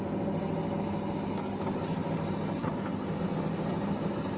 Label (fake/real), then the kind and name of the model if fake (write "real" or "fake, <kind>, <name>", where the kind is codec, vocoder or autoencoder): real